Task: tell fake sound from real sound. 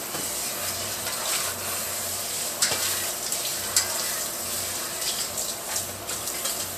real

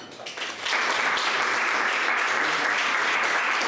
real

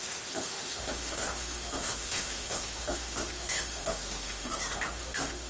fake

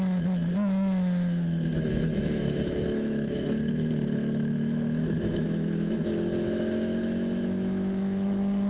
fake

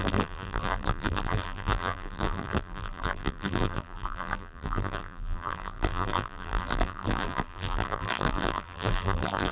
fake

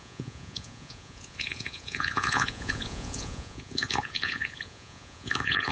fake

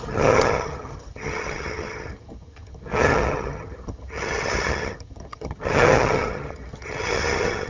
fake